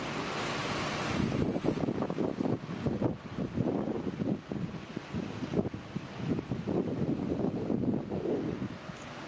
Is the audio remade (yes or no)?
no